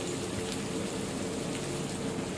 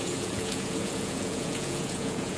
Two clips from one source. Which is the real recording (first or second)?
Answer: first